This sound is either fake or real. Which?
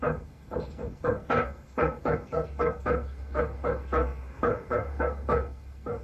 fake